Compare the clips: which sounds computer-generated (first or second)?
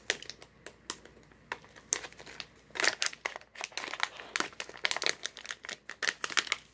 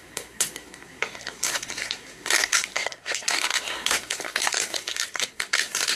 second